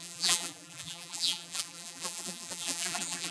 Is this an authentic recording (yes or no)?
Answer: no